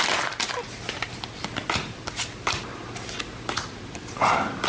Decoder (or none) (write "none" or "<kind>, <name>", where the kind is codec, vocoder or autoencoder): none